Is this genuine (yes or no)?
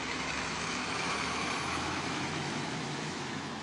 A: no